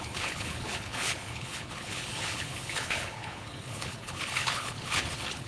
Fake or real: fake